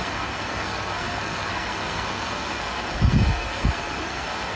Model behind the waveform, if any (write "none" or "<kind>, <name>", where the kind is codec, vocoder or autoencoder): codec, SNAC